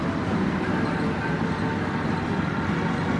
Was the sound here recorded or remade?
recorded